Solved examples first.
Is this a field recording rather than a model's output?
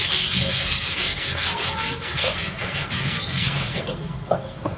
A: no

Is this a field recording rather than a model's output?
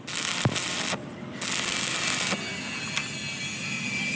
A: yes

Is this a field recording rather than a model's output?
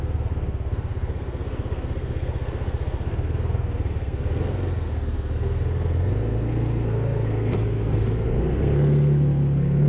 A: no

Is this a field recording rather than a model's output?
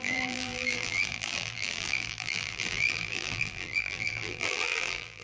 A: no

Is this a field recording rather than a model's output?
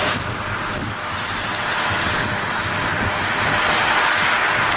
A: yes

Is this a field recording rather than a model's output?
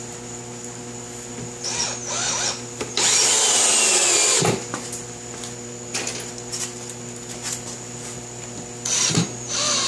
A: yes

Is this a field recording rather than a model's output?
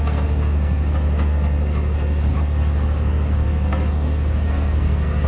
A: no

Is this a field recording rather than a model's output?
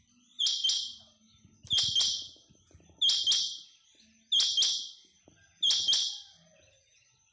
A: yes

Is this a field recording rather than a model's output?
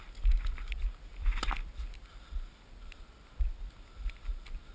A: yes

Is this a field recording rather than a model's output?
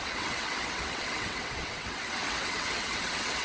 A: no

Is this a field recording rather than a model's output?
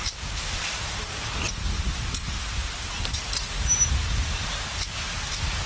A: yes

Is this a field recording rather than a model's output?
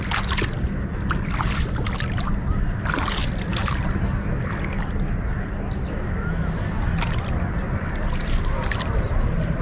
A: yes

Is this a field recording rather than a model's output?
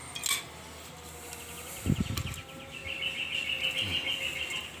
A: yes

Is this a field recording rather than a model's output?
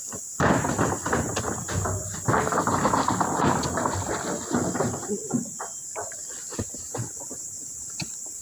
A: yes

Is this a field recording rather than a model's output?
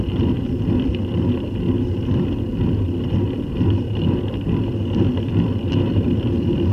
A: yes